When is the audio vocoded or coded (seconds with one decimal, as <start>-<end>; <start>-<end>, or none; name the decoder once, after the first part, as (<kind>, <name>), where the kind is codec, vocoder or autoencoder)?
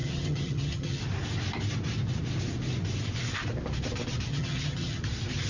0.0-1.0 (vocoder, HiFi-GAN); 4.3-5.0